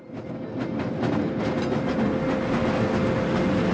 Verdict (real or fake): real